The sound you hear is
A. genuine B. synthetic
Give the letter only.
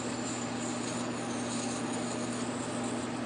A